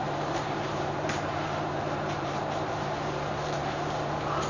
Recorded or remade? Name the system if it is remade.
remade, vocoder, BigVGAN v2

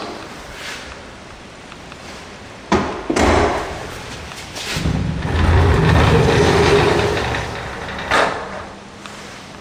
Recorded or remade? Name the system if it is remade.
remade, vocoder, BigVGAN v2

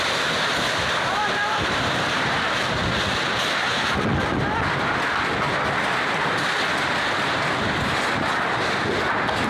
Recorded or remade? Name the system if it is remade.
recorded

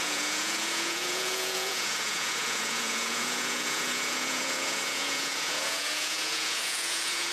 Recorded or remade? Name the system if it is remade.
remade, vocoder, Vocos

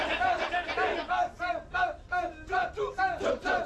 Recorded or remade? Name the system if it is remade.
recorded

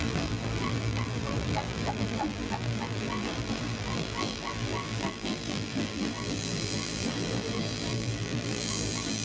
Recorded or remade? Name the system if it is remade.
remade, vocoder, BigVGAN v2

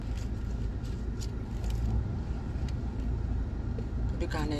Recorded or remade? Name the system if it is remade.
recorded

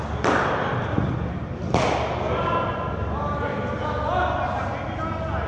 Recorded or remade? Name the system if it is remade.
recorded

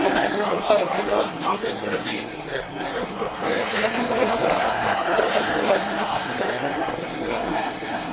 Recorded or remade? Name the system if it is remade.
remade, codec, SNAC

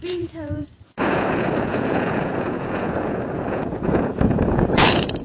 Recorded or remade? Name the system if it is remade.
remade, vocoder, Vocos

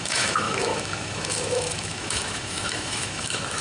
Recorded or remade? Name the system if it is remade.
remade, autoencoder, DAC-VAE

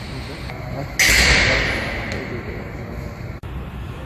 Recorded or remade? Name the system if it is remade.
recorded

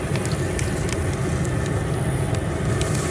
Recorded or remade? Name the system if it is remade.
recorded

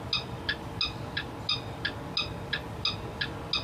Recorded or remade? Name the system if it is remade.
recorded